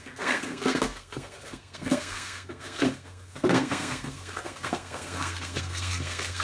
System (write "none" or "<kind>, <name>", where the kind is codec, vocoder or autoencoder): codec, SNAC